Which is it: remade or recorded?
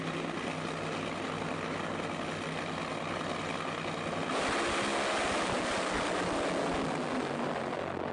recorded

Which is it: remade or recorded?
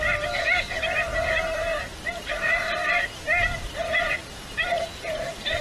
remade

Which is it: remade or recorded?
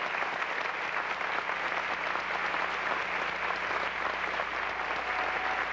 recorded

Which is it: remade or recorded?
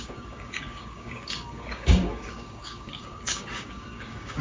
remade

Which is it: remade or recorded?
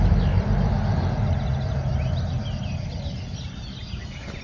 recorded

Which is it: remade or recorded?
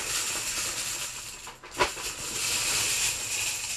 recorded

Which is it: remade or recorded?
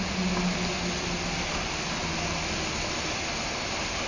recorded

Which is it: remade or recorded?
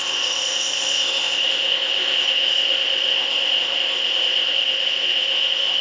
remade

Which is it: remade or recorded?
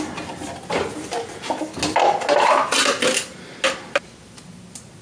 recorded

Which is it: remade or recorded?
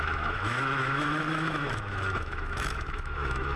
remade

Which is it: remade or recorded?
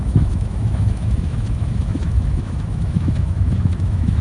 remade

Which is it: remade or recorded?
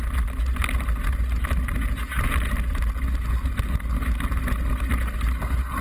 recorded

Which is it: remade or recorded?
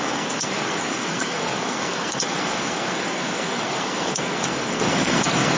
remade